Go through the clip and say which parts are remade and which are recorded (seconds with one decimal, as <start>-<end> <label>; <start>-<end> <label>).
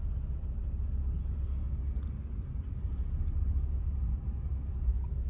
0.0-5.3 recorded